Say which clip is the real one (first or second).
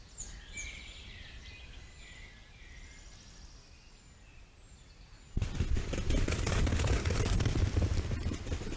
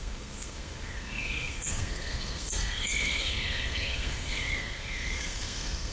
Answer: first